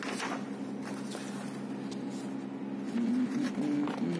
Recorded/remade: recorded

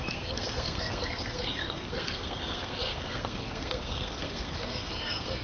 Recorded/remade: remade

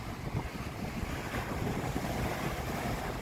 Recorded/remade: recorded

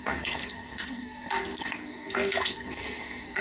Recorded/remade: remade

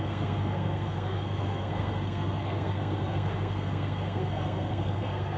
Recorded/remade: remade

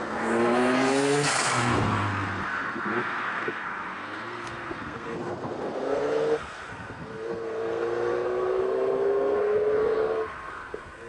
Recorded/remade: remade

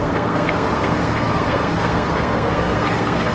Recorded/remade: remade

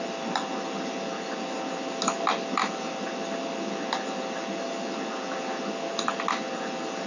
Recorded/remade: recorded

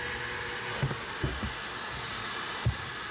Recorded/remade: recorded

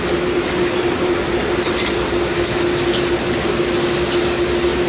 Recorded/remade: recorded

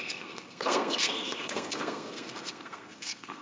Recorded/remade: remade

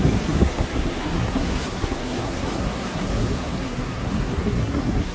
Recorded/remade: remade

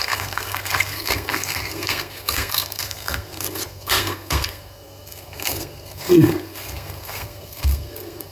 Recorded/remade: remade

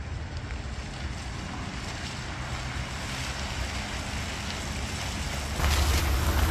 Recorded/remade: recorded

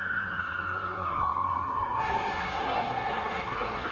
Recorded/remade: remade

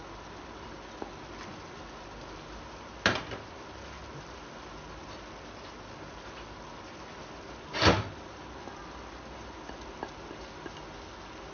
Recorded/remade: recorded